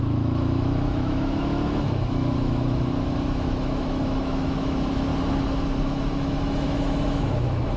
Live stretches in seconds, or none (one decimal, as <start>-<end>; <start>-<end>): 5.1-5.8